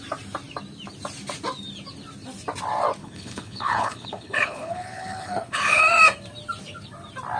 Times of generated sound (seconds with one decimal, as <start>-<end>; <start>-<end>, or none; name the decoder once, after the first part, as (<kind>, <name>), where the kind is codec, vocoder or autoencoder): 3.0-5.8 (codec, HILCodec)